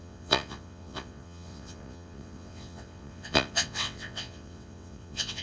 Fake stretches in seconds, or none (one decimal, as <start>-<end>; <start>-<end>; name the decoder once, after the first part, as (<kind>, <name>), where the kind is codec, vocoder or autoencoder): 0.0-5.4 (vocoder, WaveNeXt)